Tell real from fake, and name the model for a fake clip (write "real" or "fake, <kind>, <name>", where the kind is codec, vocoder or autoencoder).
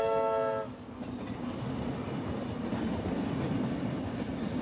real